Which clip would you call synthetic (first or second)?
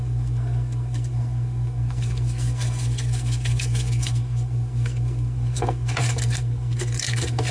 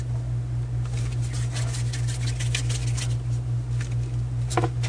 first